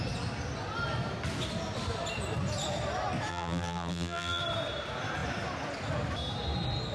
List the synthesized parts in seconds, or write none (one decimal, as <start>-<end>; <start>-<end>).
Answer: 3.3-4.4